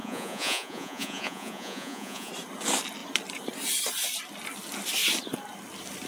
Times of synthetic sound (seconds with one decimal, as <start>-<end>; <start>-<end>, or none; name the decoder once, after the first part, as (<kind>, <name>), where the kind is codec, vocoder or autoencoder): 0.0-2.3 (vocoder, Vocos)

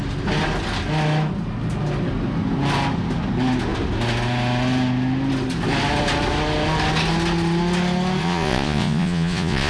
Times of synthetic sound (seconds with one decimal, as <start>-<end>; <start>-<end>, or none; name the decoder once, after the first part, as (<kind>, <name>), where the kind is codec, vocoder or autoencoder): 8.2-9.7 (vocoder, Vocos)

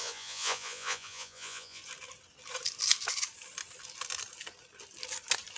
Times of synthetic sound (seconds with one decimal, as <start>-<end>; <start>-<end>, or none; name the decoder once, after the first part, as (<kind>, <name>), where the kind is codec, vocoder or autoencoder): 0.0-1.8 (vocoder, Vocos)

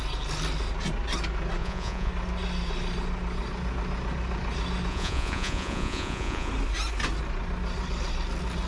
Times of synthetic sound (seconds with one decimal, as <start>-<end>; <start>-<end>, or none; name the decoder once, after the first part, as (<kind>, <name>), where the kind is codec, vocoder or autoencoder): 1.6-2.1 (vocoder, Vocos); 4.9-6.5

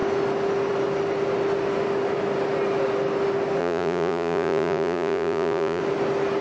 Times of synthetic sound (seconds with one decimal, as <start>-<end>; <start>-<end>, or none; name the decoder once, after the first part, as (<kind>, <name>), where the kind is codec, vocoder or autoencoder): 3.6-5.8 (vocoder, Vocos)

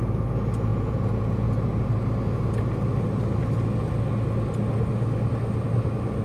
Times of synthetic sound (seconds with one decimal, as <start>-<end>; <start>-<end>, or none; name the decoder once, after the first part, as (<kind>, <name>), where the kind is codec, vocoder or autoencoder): 0.7-1.5 (vocoder, Vocos)